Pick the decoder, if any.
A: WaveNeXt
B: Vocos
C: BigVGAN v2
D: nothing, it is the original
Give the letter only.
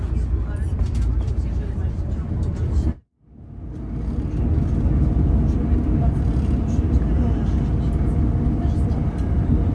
D